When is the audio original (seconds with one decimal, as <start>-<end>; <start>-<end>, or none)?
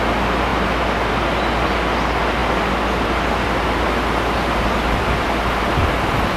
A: 0.0-6.4